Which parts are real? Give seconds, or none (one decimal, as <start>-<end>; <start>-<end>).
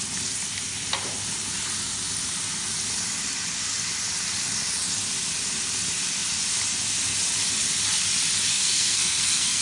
0.0-8.5